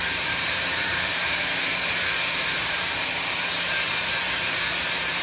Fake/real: fake